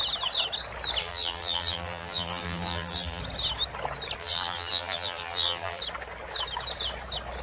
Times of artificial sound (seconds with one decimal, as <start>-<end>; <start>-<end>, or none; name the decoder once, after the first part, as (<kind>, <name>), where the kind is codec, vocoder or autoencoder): 1.0-3.2 (vocoder, BigVGAN v2); 4.2-5.8